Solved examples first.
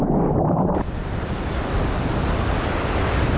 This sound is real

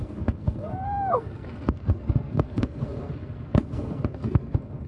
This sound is fake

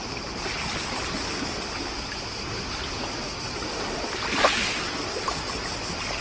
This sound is real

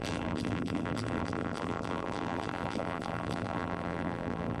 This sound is fake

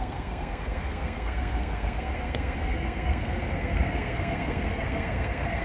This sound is fake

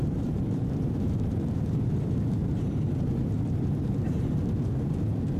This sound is fake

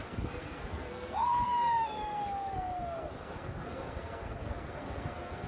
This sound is fake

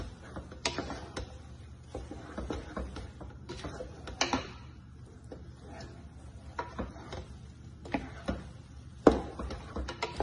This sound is real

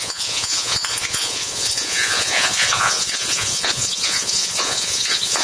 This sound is fake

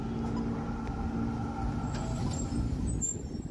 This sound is real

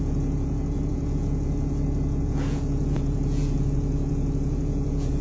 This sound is fake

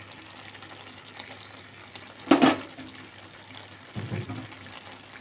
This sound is real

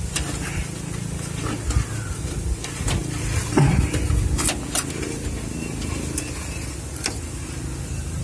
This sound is real